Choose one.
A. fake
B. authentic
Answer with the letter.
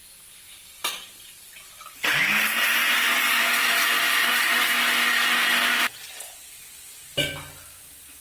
B